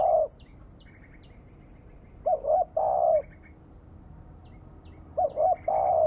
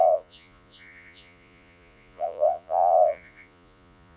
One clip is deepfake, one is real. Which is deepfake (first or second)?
second